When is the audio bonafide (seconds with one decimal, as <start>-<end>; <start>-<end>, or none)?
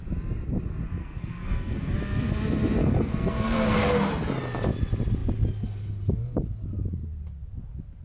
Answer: 0.0-1.0; 1.9-2.8; 4.1-8.0